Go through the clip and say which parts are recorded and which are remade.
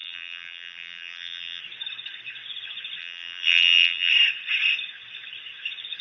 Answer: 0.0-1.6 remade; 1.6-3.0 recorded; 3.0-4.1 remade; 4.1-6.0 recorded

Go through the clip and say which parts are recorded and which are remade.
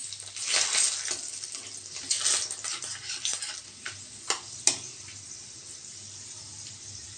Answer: 0.0-7.2 recorded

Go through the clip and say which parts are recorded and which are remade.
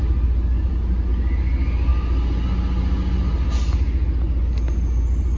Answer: 0.0-5.4 recorded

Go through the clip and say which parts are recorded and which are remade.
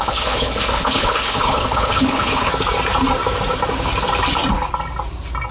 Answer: 0.0-2.5 remade; 2.5-5.5 recorded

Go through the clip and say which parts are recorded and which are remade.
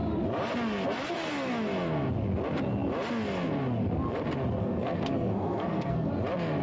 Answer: 0.0-4.6 recorded; 4.6-6.1 remade; 6.1-6.6 recorded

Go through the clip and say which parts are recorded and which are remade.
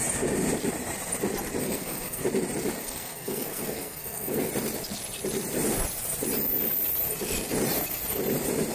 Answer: 0.0-1.6 recorded; 1.6-2.2 remade; 2.2-2.8 recorded; 2.8-4.5 remade; 4.5-8.7 recorded